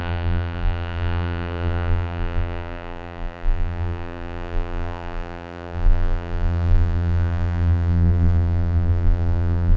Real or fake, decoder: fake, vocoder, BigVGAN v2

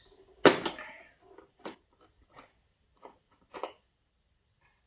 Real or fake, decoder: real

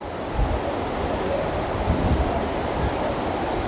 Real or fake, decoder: real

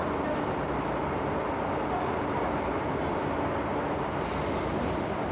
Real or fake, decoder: real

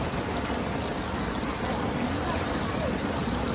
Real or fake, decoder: real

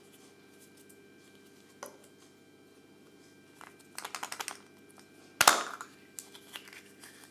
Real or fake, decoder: real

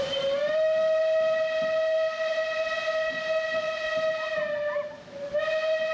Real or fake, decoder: real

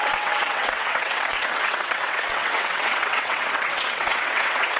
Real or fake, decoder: fake, vocoder, WaveNeXt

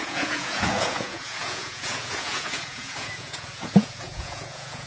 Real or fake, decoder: fake, vocoder, Vocos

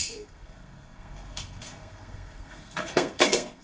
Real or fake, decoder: fake, codec, SNAC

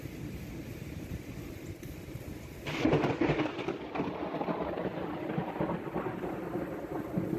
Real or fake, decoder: real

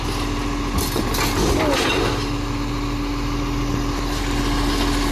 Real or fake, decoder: real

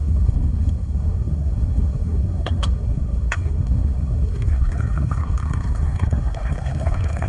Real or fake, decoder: fake, codec, SNAC